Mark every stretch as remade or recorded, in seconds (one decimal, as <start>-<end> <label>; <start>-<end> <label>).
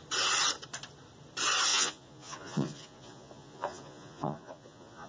0.0-1.7 recorded; 1.7-5.1 remade